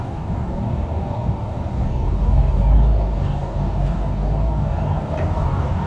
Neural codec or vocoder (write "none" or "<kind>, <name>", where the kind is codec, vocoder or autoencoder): codec, DAC